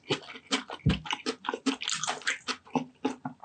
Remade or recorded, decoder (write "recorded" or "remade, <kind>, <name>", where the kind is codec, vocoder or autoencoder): recorded